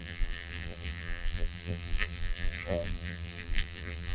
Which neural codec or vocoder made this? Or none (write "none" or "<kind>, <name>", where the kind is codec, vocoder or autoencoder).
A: vocoder, BigVGAN v2